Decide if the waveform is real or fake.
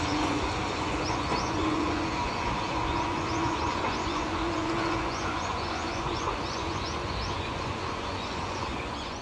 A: fake